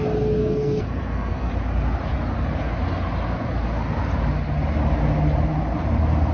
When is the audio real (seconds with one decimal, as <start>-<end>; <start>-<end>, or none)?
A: 0.0-0.4; 1.5-6.3